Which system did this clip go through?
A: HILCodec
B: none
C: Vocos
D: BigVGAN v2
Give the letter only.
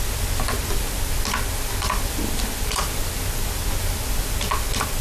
D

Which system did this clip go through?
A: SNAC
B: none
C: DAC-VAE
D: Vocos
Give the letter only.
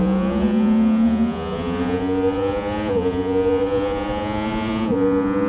D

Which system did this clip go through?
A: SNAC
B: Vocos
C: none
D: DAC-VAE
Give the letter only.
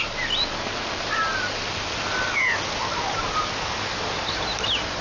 C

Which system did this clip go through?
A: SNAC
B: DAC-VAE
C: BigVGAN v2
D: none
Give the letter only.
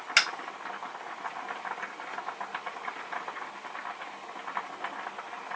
D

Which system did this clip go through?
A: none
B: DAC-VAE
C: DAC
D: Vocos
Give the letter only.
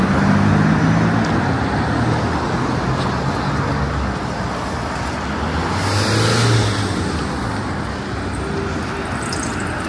A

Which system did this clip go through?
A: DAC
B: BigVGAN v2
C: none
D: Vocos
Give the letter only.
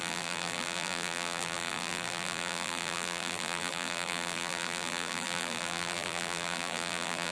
B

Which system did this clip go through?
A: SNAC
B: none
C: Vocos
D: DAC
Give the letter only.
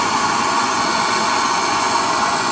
C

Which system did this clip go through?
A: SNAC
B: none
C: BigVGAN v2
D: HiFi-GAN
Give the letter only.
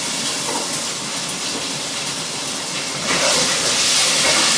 B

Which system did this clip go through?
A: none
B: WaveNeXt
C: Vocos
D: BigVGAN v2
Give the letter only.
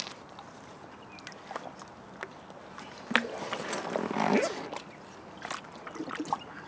A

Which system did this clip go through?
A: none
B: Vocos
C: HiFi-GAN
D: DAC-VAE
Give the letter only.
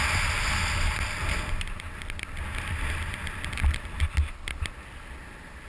A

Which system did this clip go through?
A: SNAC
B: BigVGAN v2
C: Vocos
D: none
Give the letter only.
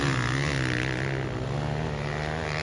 D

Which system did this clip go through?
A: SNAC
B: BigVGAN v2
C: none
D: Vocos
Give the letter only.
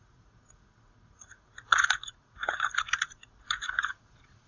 D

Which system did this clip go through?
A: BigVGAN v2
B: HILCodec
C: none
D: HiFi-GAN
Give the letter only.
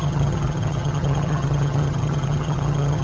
D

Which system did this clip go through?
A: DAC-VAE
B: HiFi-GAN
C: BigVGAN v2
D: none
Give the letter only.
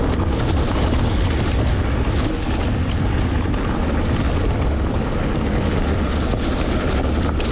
D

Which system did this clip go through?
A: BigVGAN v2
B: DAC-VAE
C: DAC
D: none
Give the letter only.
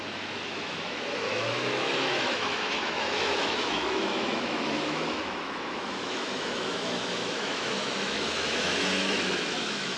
B